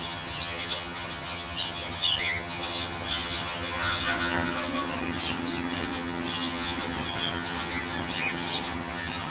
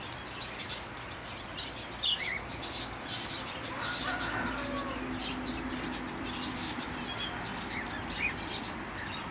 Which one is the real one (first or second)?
second